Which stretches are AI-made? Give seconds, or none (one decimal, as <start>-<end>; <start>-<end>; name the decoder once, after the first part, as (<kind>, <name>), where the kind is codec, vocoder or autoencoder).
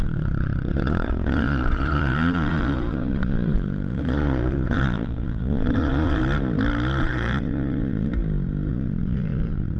0.0-6.2 (vocoder, Vocos); 7.0-8.1; 8.7-9.8